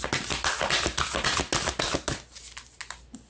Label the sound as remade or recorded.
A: recorded